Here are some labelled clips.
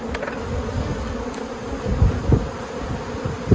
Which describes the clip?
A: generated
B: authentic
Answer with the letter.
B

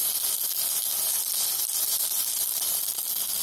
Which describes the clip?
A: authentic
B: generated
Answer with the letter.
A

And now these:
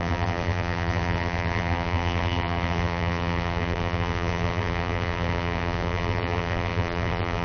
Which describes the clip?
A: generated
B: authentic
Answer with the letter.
A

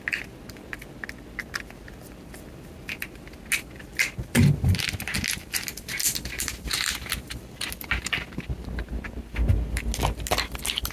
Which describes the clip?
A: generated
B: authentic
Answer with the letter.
B